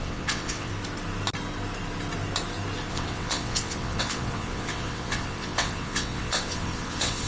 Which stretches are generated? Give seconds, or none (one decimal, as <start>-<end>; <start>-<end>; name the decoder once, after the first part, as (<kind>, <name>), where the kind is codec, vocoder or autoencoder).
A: 0.0-0.7 (vocoder, WaveNeXt); 2.9-7.3